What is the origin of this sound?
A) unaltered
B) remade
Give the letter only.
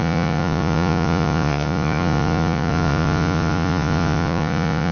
B